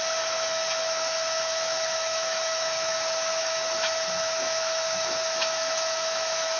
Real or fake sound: fake